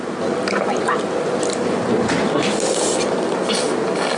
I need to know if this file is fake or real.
real